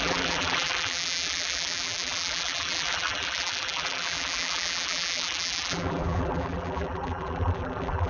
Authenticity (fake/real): fake